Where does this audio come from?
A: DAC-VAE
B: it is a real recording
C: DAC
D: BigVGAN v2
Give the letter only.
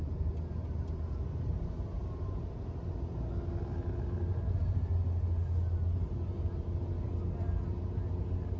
B